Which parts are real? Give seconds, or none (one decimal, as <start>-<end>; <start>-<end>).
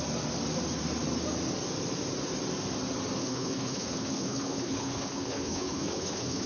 0.0-3.2